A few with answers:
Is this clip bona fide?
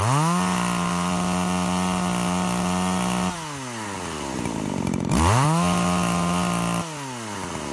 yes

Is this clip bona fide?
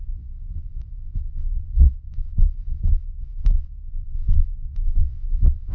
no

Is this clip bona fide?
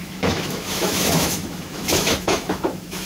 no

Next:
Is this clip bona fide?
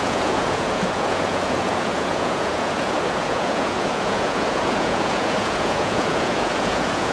no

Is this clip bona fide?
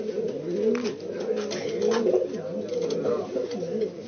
yes